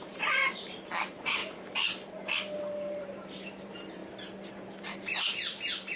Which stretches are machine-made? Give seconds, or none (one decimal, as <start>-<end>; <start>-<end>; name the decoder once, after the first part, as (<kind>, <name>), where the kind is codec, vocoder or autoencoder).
0.0-1.4 (vocoder, BigVGAN v2); 2.6-4.0; 4.5-6.0

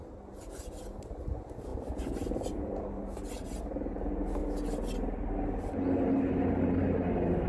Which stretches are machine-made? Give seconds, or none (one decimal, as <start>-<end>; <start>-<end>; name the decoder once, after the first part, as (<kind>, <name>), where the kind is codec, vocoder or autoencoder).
1.7-2.9 (vocoder, BigVGAN v2)

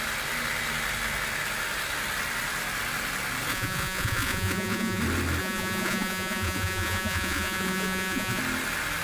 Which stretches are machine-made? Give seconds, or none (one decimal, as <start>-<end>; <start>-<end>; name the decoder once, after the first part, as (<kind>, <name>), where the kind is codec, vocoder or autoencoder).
3.5-5.0 (vocoder, Vocos); 5.4-8.4

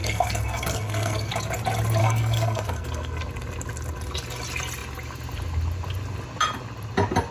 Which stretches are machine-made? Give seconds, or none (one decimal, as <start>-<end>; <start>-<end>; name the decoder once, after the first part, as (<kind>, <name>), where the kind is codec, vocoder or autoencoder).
0.0-1.3 (codec, SNAC); 2.0-3.2